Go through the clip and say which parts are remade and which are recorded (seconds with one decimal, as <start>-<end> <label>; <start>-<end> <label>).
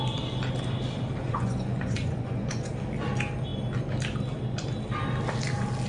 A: 0.0-1.2 recorded; 1.2-2.7 remade; 2.7-5.9 recorded